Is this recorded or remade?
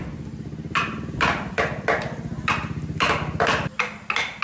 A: recorded